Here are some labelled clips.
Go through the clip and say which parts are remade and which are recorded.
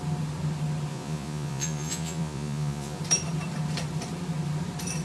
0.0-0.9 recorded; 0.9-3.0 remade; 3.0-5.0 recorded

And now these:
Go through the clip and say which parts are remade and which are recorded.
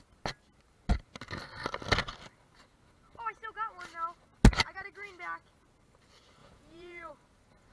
0.0-6.4 recorded; 6.4-7.1 remade; 7.1-7.7 recorded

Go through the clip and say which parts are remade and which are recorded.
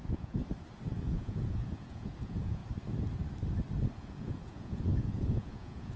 0.0-0.4 remade; 0.4-1.0 recorded; 1.0-2.6 remade; 2.6-4.0 recorded; 4.0-6.0 remade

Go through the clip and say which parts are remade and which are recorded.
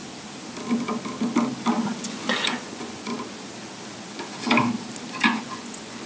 0.0-2.0 recorded; 2.0-3.1 remade; 3.1-5.2 recorded; 5.2-6.1 remade